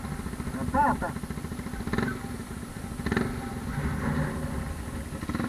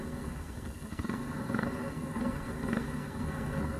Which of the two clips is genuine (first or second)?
first